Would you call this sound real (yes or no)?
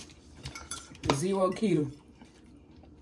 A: no